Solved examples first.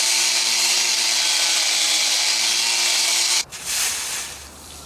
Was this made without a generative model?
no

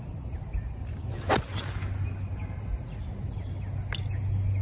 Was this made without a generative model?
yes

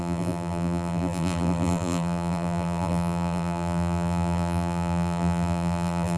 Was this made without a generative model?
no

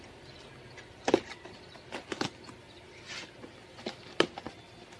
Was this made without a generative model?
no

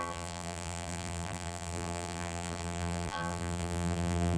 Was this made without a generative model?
no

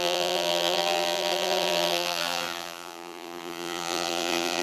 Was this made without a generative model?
no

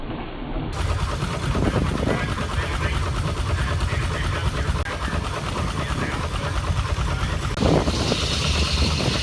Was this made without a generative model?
yes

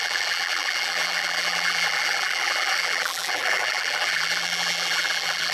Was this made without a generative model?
no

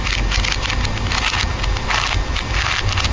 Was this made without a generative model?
yes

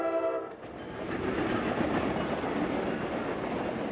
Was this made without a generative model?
yes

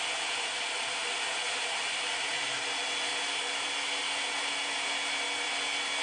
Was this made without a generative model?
yes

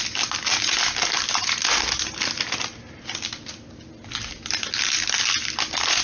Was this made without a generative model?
yes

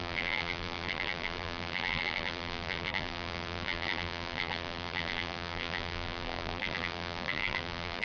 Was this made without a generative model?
no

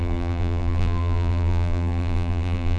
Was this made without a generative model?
no